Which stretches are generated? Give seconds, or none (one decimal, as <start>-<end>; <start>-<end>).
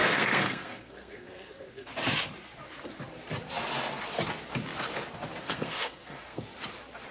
0.0-1.9; 5.4-6.4